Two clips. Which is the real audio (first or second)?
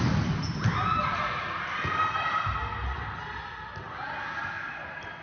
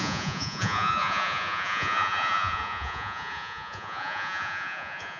first